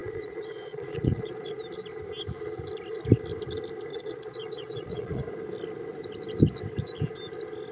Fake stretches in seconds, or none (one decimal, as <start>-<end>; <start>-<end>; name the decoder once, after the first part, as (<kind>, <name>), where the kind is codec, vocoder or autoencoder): 0.0-1.6 (vocoder, Vocos); 3.9-5.2